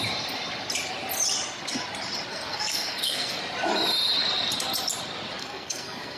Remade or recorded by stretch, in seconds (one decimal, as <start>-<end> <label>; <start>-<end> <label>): 0.0-2.3 recorded; 2.3-3.4 remade; 3.4-5.4 recorded; 5.4-6.2 remade